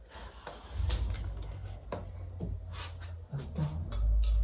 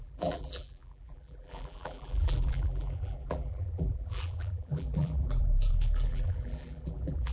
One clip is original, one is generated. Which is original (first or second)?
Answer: first